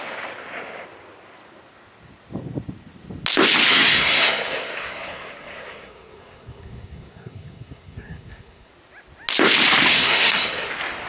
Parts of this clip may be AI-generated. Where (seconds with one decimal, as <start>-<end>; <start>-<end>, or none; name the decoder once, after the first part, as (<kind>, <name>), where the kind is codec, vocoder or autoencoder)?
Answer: 3.7-8.7 (codec, SNAC); 9.9-10.7